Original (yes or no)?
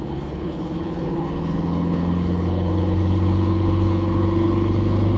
no